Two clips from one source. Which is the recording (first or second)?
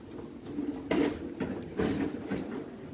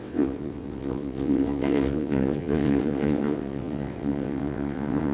first